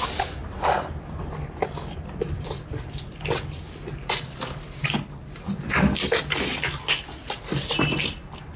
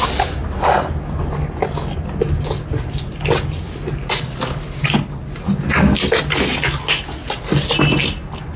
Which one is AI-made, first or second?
first